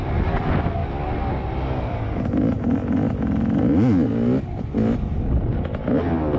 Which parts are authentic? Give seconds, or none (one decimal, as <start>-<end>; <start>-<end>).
0.0-6.4